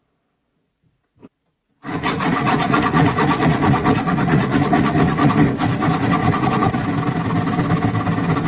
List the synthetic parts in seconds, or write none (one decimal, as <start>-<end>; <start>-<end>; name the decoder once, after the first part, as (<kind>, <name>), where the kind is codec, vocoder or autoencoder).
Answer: 0.5-5.3 (vocoder, Vocos); 6.2-6.8